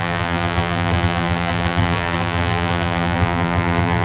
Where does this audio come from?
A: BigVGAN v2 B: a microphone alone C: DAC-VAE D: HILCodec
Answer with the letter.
A